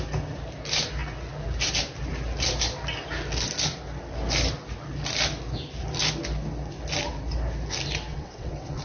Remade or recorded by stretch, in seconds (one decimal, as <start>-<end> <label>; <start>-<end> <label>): 0.0-8.1 recorded; 8.1-8.8 remade